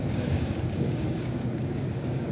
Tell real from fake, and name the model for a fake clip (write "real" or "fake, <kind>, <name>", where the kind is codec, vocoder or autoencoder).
fake, codec, DAC